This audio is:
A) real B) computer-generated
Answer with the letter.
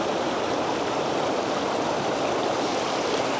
A